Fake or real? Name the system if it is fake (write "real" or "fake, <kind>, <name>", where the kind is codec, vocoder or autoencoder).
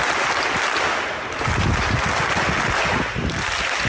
real